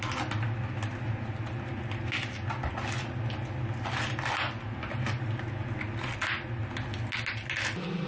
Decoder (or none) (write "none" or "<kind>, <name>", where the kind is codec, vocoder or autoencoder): none